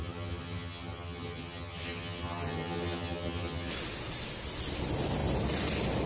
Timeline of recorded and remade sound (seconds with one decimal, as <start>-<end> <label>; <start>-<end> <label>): 0.0-3.7 remade; 3.7-6.1 recorded